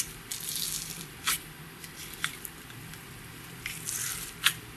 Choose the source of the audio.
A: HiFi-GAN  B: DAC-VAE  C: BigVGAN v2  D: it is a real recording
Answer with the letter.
C